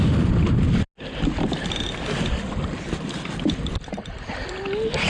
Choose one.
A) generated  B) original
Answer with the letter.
B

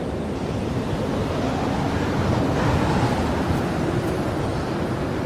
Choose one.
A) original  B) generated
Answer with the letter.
A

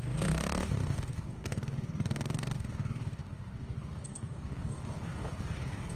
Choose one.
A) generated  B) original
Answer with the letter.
A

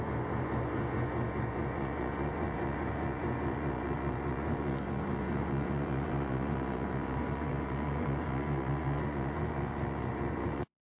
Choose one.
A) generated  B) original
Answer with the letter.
A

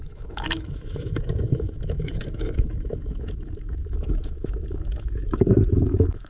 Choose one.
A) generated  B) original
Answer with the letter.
A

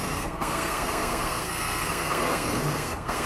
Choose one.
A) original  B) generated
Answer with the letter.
B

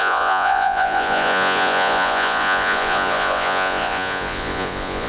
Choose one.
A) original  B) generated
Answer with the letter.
B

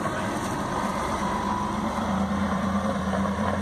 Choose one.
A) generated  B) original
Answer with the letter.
A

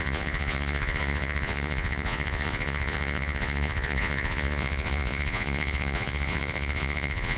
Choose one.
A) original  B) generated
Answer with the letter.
B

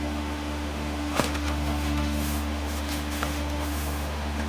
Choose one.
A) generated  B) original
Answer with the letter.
A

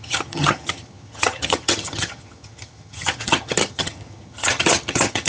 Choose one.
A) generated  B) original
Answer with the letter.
A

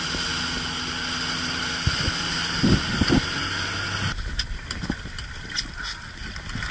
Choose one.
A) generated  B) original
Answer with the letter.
B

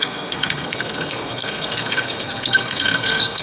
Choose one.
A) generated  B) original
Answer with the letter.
A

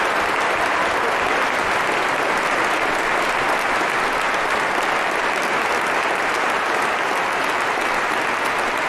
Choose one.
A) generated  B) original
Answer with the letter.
B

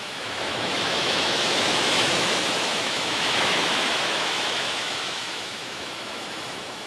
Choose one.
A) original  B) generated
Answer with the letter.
B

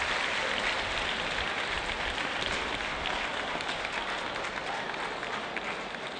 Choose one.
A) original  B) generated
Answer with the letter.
A